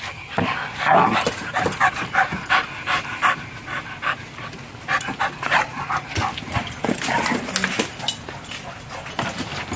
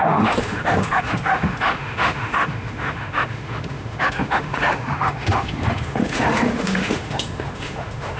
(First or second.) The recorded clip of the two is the first